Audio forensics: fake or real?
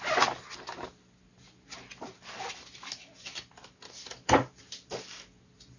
real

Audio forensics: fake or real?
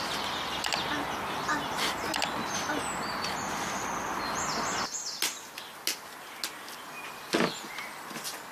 real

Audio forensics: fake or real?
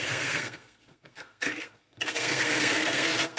fake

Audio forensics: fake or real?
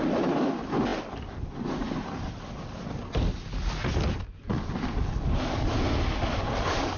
real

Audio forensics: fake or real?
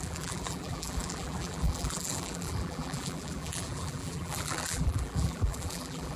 fake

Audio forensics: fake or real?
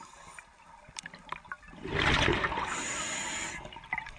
real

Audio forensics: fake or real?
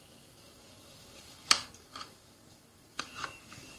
fake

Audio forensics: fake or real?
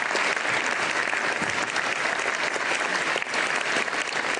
real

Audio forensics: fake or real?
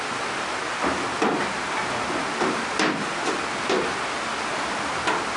real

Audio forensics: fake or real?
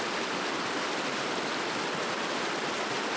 real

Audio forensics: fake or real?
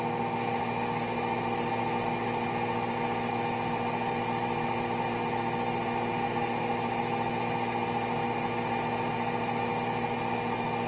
real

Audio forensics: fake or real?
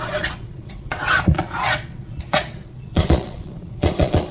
fake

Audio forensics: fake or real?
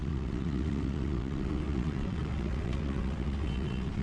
fake